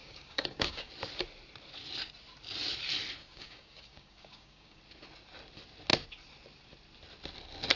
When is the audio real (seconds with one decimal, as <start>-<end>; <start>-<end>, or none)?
0.9-3.2; 4.8-7.8